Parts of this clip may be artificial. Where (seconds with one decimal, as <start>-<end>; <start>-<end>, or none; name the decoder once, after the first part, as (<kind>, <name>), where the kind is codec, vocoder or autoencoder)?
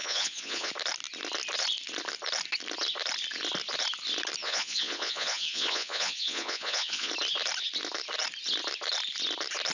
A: 0.0-0.7 (vocoder, Vocos); 4.4-7.1